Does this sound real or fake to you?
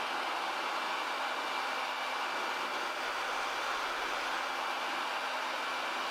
real